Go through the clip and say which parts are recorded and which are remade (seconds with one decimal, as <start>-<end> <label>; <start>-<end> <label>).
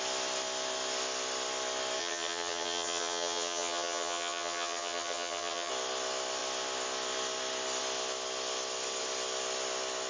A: 0.0-2.0 recorded; 2.0-5.7 remade; 5.7-10.1 recorded